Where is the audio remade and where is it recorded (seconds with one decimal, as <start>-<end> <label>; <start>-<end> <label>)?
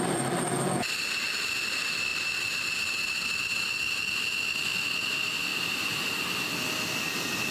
0.0-7.5 recorded